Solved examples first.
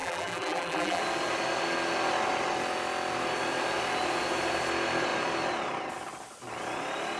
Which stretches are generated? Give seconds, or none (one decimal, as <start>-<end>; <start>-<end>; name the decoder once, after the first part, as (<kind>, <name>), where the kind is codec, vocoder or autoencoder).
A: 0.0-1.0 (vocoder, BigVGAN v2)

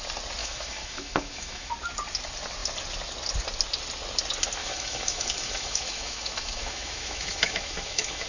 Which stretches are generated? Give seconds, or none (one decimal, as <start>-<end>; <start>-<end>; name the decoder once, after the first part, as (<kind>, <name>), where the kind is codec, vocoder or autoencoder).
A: 0.4-1.7 (autoencoder, DAC-VAE); 4.6-8.3

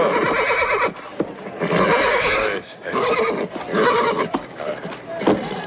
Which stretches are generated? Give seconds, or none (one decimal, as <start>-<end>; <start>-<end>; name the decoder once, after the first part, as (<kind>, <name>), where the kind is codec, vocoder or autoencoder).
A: 2.1-3.2 (codec, DAC); 3.7-4.7

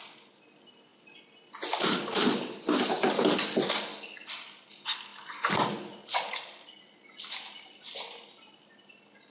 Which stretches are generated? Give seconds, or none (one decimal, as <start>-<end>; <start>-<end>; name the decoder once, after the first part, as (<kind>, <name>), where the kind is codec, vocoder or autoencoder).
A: none

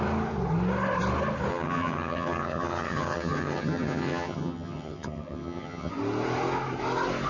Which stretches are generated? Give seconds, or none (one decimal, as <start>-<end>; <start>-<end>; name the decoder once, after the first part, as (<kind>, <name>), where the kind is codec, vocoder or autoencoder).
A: 1.5-5.9 (vocoder, HiFi-GAN)

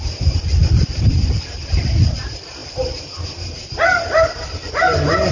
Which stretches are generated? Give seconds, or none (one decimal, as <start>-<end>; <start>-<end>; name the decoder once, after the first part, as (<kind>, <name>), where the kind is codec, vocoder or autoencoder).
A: 0.6-1.2 (vocoder, BigVGAN v2)

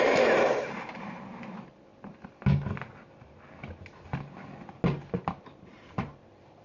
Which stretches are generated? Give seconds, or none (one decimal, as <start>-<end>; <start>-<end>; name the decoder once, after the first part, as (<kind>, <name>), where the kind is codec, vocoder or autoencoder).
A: 0.0-1.9 (vocoder, BigVGAN v2); 5.4-6.6

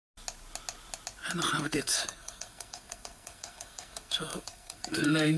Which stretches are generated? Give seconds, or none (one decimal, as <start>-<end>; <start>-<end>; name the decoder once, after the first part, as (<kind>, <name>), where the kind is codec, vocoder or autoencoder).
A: 1.6-5.4 (codec, SNAC)